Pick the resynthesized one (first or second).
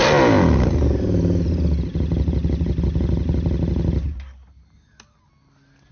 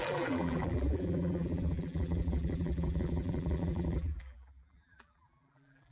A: second